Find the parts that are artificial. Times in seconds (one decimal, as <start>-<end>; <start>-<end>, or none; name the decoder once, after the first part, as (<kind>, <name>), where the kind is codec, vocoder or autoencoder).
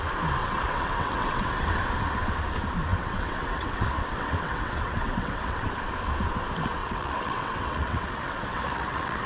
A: 0.4-1.8 (vocoder, WaveNeXt); 2.9-5.7; 6.8-9.3